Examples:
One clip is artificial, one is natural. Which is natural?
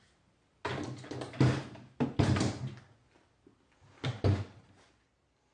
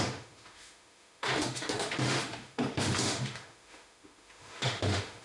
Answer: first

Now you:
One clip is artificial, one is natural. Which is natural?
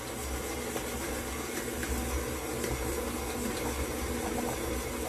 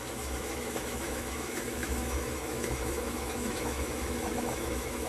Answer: first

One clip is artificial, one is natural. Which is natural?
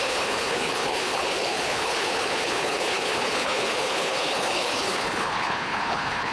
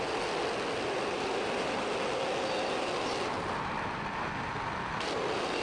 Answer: second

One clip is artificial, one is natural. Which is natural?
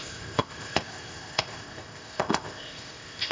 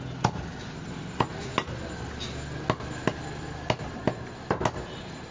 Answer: second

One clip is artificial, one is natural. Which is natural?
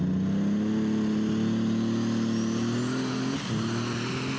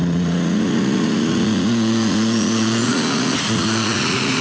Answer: first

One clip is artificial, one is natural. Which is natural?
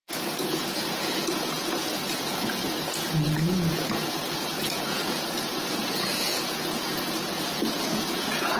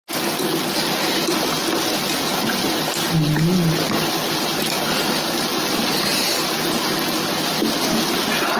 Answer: second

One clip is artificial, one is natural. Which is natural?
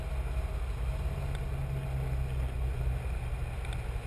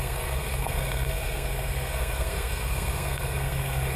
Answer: first